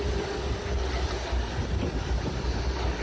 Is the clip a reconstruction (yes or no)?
no